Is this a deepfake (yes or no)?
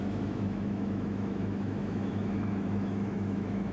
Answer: yes